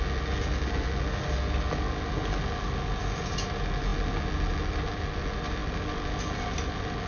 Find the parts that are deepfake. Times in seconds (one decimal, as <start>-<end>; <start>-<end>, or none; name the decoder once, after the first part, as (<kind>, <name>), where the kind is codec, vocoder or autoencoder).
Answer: none